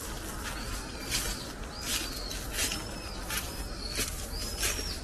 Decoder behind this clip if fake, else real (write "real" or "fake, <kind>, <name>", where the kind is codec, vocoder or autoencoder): real